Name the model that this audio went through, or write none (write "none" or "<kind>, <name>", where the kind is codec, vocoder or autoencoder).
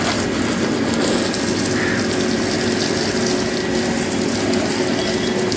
none